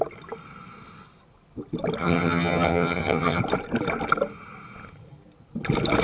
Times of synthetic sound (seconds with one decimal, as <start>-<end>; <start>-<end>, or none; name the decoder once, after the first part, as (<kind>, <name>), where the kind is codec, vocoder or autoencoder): 2.0-3.4 (vocoder, HiFi-GAN)